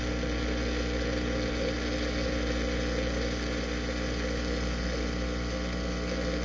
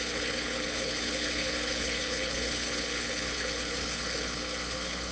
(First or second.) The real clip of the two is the first